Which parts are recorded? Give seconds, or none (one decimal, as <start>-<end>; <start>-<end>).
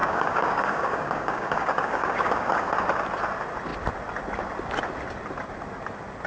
2.7-6.3